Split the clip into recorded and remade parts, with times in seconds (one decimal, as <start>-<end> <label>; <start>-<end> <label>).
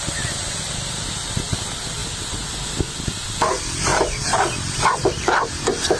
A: 0.0-3.9 recorded; 3.9-4.5 remade; 4.5-5.0 recorded; 5.0-5.5 remade; 5.5-6.0 recorded